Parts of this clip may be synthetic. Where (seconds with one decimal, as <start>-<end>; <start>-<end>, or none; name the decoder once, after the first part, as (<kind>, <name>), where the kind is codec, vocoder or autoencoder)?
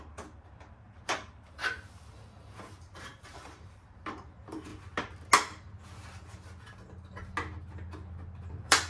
0.0-4.7 (vocoder, BigVGAN v2); 8.5-8.9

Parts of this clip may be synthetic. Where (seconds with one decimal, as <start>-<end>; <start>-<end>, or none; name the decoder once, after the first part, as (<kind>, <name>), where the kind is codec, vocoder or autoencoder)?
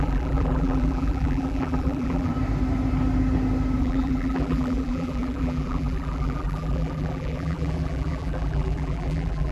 0.0-2.3 (vocoder, BigVGAN v2); 3.8-9.5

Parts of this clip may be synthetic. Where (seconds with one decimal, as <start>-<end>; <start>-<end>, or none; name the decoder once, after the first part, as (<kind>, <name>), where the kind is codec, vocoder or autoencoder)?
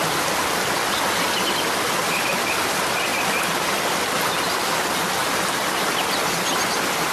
none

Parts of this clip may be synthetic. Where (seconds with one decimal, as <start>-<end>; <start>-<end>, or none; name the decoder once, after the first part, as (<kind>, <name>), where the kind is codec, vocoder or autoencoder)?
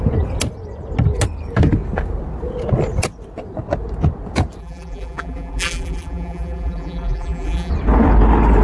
4.6-7.7 (vocoder, BigVGAN v2)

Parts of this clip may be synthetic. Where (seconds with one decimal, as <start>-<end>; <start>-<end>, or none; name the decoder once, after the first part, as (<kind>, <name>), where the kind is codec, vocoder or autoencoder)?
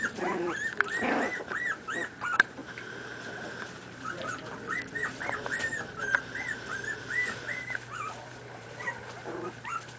0.0-10.0 (vocoder, BigVGAN v2)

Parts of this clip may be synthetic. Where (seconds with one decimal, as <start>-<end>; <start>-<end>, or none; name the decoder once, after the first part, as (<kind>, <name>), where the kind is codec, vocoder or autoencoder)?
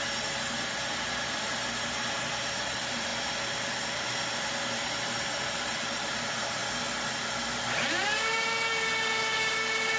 0.0-3.1 (vocoder, BigVGAN v2); 4.7-6.6